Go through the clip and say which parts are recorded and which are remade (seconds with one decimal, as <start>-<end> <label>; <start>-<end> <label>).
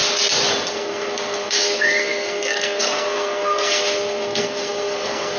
0.0-0.7 recorded; 0.7-5.4 remade